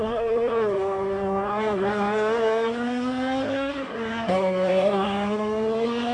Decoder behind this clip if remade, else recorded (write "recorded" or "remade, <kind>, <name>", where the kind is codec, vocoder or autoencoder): remade, codec, SNAC